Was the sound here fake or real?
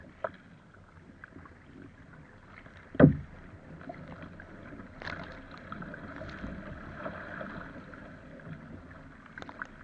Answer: real